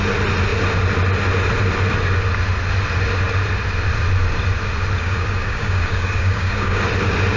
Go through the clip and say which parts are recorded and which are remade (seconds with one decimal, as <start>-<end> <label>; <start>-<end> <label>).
0.0-5.0 recorded; 5.0-6.8 remade; 6.8-7.4 recorded